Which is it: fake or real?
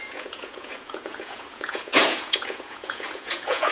fake